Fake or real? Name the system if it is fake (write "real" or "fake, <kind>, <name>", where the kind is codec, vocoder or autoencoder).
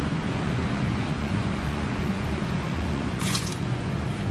fake, vocoder, Vocos